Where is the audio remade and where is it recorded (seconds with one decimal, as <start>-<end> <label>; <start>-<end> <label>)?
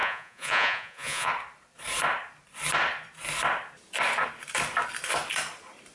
0.0-1.3 remade; 1.3-5.9 recorded